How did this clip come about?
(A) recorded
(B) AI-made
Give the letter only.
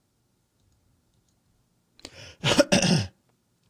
A